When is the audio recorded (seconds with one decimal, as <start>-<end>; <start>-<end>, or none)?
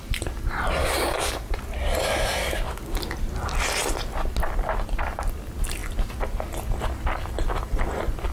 0.0-0.8; 1.5-2.4; 3.0-8.3